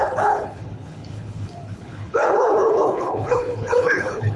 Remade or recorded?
remade